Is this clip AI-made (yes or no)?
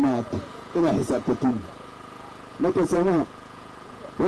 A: yes